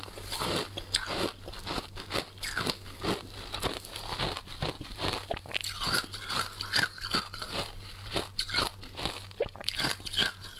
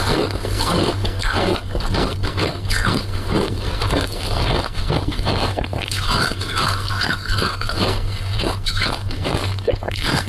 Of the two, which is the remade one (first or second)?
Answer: second